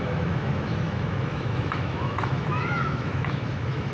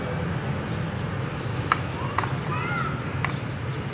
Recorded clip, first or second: second